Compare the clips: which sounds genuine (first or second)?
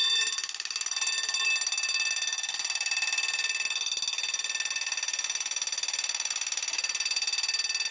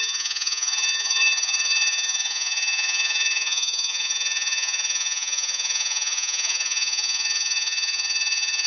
first